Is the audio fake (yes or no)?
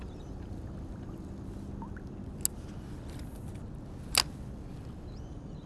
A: no